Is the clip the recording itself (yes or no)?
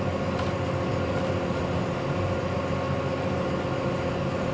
yes